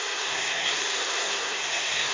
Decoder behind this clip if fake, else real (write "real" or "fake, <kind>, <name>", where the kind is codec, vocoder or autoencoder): fake, codec, SNAC